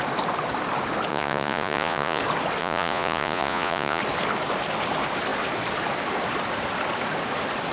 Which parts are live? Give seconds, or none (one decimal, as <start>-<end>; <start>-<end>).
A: 0.0-1.1; 2.2-2.6; 4.0-7.7